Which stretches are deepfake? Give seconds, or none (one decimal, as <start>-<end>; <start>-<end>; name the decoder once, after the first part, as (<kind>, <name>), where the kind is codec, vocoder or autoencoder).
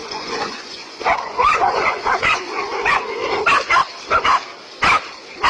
0.0-3.0 (vocoder, Vocos)